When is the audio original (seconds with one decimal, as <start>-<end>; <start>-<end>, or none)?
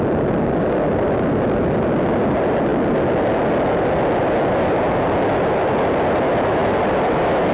0.0-7.5